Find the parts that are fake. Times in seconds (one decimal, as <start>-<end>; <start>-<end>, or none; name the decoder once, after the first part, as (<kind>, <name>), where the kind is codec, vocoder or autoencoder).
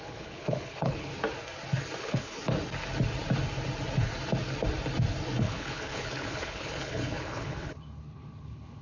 0.0-1.1 (codec, HILCodec); 2.0-2.4; 5.4-8.8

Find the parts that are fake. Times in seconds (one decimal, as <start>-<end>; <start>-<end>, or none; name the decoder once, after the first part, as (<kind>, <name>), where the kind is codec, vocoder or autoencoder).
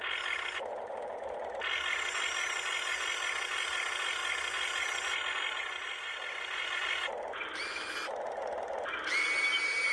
none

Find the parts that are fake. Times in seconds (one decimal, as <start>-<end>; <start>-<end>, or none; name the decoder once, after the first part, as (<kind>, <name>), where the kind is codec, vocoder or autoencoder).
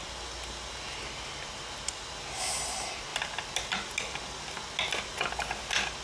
none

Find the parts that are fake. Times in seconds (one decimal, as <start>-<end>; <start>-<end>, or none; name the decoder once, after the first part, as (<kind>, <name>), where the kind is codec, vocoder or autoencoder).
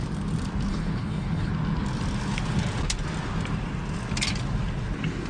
0.7-1.5 (codec, HILCodec)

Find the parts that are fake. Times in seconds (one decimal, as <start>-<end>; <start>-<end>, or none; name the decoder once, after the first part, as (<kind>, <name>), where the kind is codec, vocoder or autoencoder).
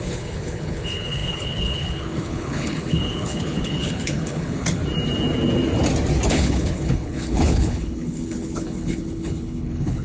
0.0-4.8 (codec, HILCodec); 6.3-10.0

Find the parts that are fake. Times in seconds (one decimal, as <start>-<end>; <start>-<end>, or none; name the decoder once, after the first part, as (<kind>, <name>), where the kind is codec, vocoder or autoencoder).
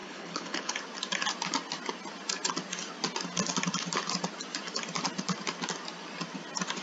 0.0-0.8 (codec, HILCodec)